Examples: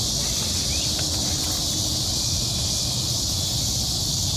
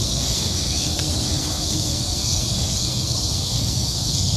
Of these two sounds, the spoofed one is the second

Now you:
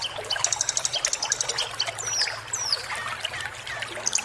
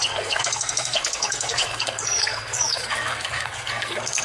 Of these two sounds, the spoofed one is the second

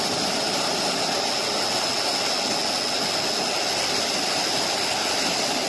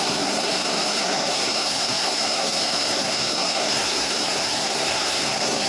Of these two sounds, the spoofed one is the second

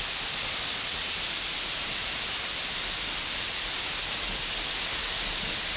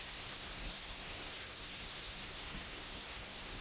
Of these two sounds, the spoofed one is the second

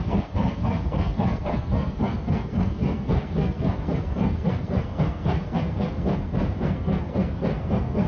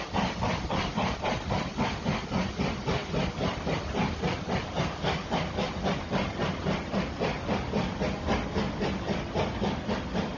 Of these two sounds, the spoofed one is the first